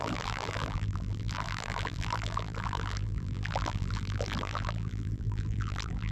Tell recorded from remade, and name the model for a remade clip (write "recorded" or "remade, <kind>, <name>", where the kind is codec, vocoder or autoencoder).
remade, vocoder, BigVGAN v2